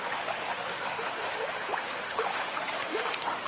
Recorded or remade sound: remade